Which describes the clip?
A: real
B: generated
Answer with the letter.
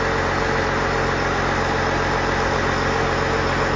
A